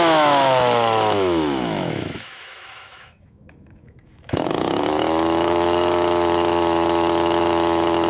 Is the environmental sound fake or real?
fake